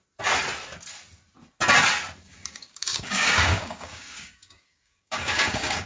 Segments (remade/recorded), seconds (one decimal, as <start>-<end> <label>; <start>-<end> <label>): 0.0-2.3 recorded; 2.3-5.9 remade